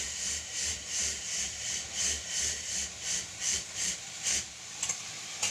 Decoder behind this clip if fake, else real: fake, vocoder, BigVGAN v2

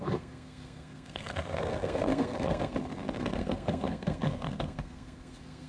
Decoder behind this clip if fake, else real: fake, codec, SNAC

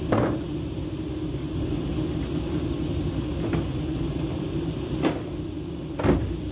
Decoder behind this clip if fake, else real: real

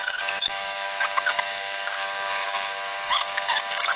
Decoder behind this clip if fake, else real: fake, codec, DAC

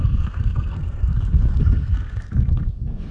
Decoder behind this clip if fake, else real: fake, codec, SNAC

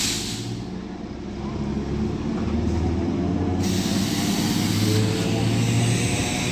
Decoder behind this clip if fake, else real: real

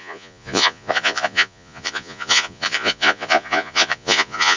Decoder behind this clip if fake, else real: fake, vocoder, Vocos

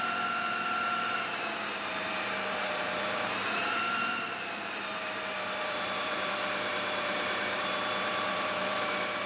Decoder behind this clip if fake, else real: fake, vocoder, BigVGAN v2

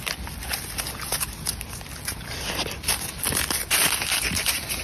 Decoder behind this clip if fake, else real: real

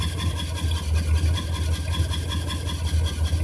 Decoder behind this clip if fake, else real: real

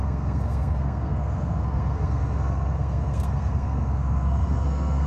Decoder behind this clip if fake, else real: fake, codec, SNAC